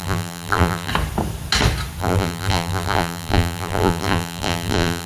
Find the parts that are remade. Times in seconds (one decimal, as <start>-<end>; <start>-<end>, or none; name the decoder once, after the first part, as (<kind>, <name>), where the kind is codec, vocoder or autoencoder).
0.0-0.9 (vocoder, BigVGAN v2); 2.0-5.1